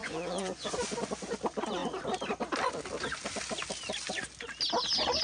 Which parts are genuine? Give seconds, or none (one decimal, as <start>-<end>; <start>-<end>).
0.7-5.2